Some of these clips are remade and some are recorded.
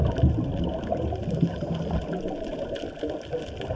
recorded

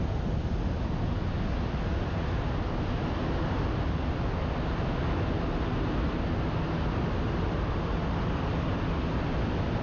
recorded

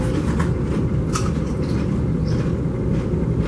recorded